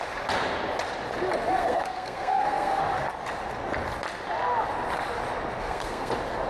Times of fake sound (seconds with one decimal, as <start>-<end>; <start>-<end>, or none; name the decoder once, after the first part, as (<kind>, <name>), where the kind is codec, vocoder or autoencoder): 1.6-2.8 (codec, SNAC); 5.6-6.1